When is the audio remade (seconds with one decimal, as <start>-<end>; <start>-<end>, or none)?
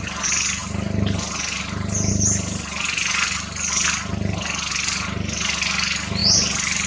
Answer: none